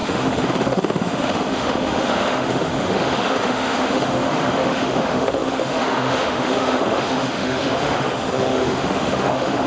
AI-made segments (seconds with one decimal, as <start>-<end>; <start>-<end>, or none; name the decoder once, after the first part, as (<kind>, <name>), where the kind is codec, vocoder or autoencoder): 0.0-9.7 (autoencoder, DAC-VAE)